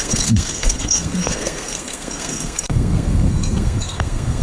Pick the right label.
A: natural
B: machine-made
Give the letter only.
B